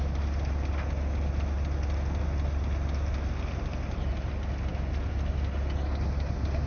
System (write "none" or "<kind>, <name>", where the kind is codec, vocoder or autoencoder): none